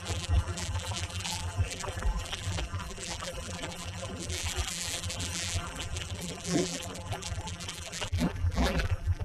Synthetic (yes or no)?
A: yes